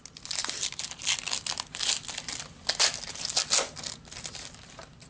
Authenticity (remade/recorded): recorded